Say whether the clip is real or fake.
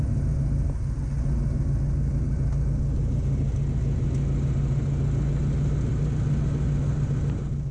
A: real